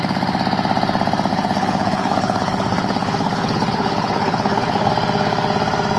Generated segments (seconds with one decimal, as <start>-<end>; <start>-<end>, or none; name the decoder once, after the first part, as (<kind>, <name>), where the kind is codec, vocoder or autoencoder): 1.3-4.9 (codec, HILCodec)